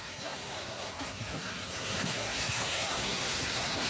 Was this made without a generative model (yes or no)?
no